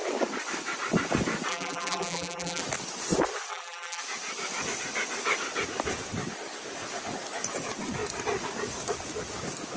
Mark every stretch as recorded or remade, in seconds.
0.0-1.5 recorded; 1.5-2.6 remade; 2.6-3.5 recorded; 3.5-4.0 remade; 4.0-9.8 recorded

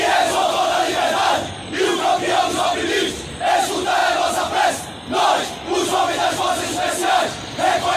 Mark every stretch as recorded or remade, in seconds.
0.0-8.0 recorded